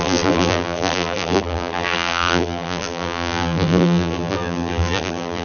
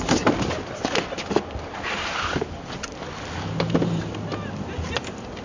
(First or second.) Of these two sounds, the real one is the second